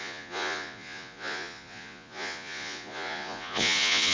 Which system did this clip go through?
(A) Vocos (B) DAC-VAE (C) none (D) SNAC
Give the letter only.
A